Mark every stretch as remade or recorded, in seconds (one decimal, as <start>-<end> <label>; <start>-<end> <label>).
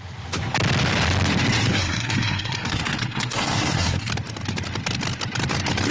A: 0.0-1.7 recorded; 1.7-4.1 remade; 4.1-5.9 recorded